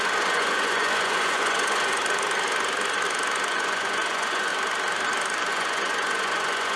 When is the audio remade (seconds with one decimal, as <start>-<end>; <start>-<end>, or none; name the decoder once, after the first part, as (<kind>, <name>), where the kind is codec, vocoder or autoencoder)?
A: 0.0-2.0 (vocoder, Vocos); 3.5-4.5; 5.5-6.8